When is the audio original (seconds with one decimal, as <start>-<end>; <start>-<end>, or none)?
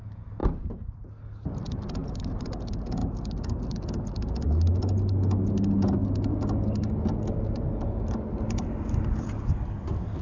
0.0-0.4; 1.1-2.0; 2.5-10.2